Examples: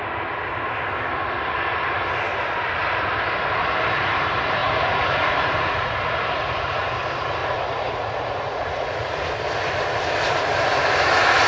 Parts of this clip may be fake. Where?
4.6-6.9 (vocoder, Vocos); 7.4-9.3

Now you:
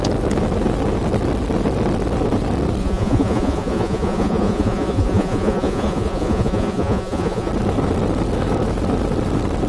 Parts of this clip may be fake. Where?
2.8-7.5 (vocoder, Vocos)